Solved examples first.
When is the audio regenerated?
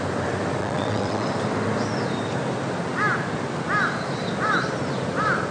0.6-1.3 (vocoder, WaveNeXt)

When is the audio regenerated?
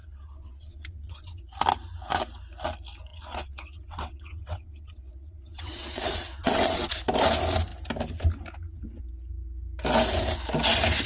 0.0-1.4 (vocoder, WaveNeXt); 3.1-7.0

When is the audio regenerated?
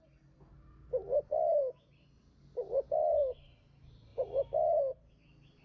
none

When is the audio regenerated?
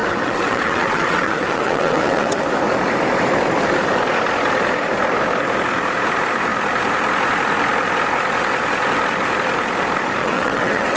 0.0-2.4 (vocoder, WaveNeXt); 10.2-11.0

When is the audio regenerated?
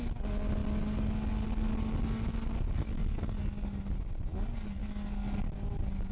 none